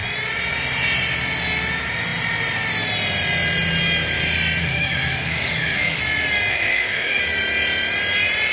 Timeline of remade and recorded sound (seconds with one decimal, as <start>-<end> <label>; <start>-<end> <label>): 0.0-4.6 recorded; 4.6-6.0 remade; 6.0-6.5 recorded; 6.5-7.2 remade; 7.2-8.5 recorded